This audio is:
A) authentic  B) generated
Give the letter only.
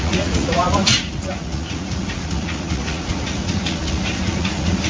B